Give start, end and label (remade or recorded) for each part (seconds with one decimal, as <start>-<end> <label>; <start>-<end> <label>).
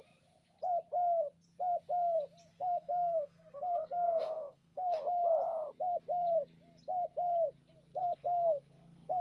0.0-2.5 recorded; 2.5-5.0 remade; 5.0-8.0 recorded; 8.0-9.2 remade